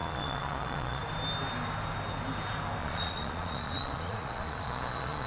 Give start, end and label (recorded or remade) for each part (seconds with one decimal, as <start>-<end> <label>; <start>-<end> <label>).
0.0-1.0 remade; 1.0-2.8 recorded; 2.8-5.3 remade